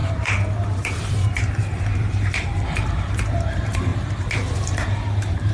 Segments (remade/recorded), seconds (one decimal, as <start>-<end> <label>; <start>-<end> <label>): 0.0-3.9 remade; 3.9-4.5 recorded; 4.5-5.5 remade